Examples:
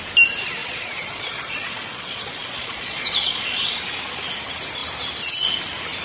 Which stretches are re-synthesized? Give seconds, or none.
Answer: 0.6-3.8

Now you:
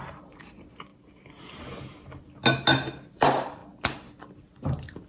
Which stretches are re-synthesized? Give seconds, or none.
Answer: 0.0-0.9; 3.1-3.6

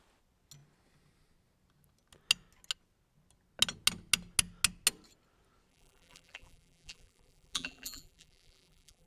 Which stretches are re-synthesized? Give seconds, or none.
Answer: 5.7-9.1

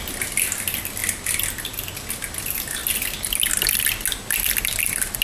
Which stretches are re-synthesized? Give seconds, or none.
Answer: none

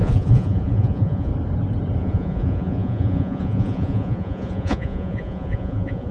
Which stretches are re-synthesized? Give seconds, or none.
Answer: 0.0-1.3; 2.0-6.1

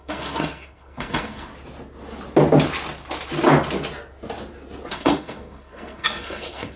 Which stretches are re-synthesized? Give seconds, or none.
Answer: 0.0-1.5; 4.9-6.8

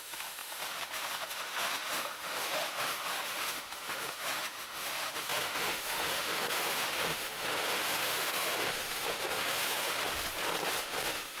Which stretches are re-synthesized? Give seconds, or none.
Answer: 0.0-10.0; 10.8-11.4